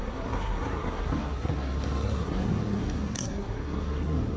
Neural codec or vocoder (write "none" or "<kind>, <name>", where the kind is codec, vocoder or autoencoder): codec, SNAC